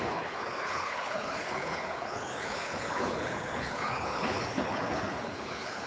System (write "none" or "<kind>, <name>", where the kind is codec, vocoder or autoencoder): codec, HILCodec